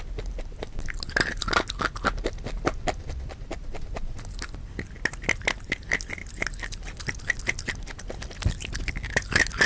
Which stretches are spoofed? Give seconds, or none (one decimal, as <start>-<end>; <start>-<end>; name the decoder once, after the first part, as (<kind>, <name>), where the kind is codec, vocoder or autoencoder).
none